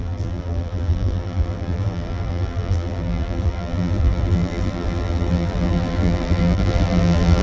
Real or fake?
fake